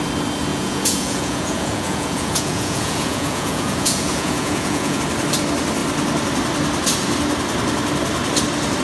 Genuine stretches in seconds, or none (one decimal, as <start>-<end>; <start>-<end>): 0.0-0.5; 5.0-8.8

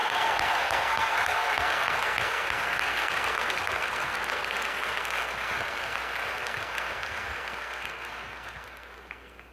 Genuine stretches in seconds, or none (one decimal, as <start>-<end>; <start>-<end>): none

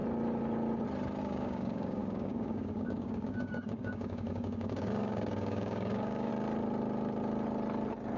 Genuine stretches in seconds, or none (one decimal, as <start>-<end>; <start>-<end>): 0.0-1.2; 6.3-8.2

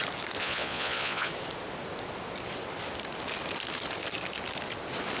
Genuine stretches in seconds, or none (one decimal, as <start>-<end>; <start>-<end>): 0.0-0.4; 1.3-5.2

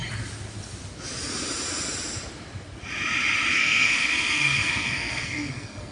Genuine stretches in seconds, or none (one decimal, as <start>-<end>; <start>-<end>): 0.0-3.5

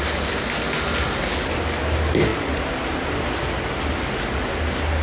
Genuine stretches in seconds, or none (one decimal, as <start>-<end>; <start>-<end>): 0.0-5.0

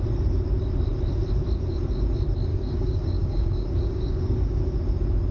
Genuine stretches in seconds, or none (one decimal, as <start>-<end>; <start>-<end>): 0.0-2.5; 4.6-5.3